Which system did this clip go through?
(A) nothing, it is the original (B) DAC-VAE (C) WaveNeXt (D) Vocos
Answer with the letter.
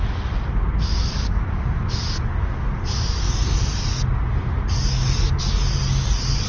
A